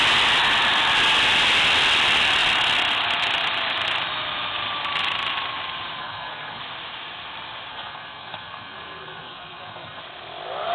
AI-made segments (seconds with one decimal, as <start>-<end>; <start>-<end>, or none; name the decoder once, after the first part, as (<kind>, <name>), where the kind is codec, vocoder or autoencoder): 6.0-6.6 (codec, SNAC); 7.7-10.0